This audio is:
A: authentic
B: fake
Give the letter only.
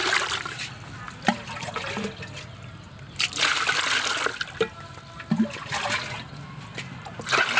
A